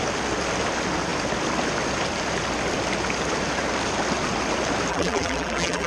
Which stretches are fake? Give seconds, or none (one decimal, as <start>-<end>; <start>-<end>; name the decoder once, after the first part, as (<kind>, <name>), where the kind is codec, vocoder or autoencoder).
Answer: 4.9-5.9 (vocoder, BigVGAN v2)